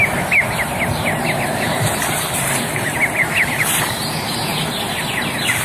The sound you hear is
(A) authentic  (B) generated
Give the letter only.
A